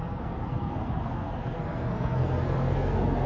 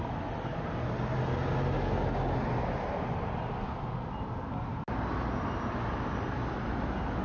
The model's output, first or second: first